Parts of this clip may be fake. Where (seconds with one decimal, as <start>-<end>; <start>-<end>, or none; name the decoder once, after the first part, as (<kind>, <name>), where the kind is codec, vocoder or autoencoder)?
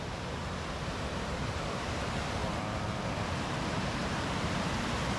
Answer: 0.0-0.4 (vocoder, BigVGAN v2); 1.1-2.4; 3.7-5.2